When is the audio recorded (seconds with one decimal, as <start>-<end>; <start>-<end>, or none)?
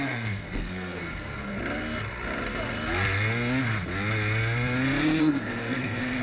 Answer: 1.5-5.2